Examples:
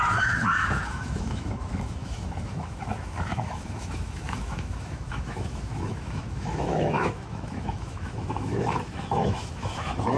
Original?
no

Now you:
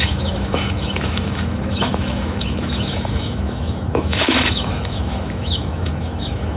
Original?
no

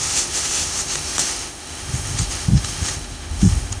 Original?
no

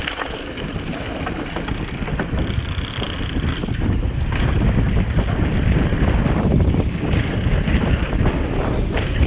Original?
yes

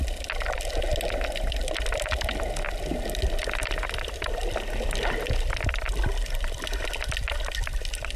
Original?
yes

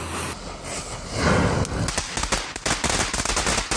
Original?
yes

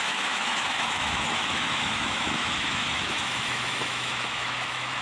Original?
no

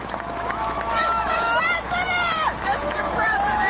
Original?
no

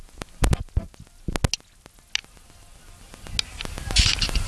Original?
yes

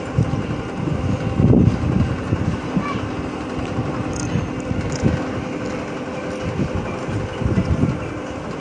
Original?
yes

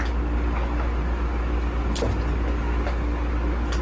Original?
yes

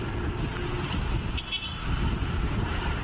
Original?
yes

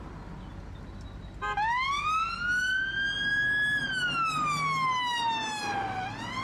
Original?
yes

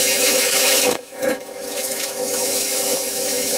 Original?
no